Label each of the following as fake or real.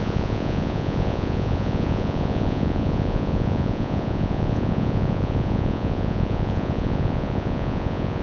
fake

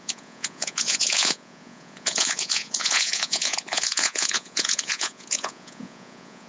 fake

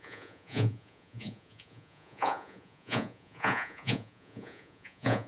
fake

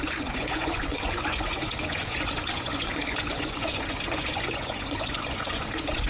fake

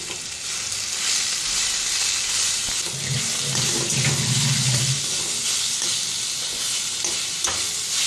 real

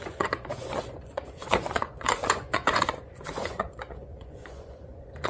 fake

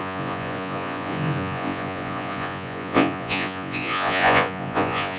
fake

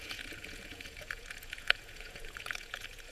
fake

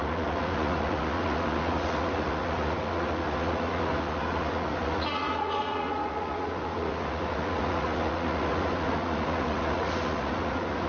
fake